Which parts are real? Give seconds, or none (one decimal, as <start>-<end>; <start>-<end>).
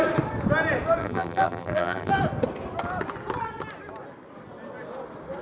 0.0-1.0; 2.1-5.4